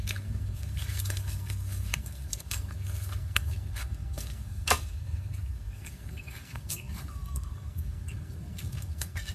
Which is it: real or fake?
fake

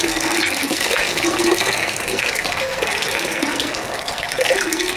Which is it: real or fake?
fake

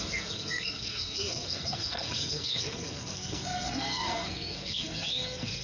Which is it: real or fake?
fake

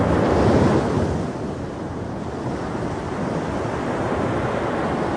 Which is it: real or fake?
real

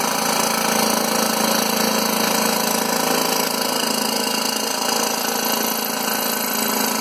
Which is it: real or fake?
real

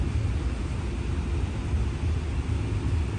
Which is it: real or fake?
real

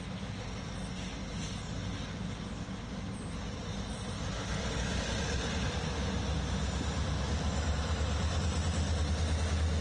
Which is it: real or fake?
real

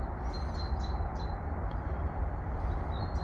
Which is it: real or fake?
real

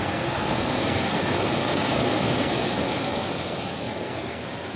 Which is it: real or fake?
fake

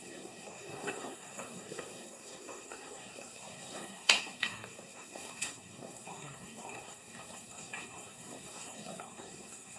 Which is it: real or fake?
fake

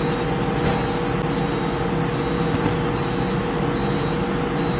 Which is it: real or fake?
real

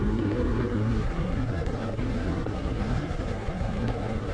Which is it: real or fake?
fake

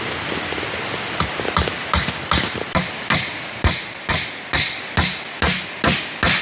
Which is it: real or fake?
real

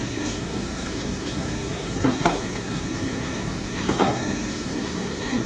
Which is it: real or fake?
fake